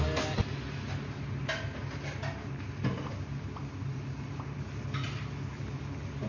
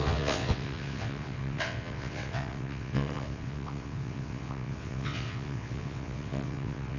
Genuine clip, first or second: first